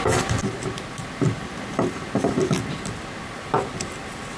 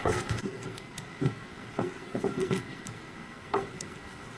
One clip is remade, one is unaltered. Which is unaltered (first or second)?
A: first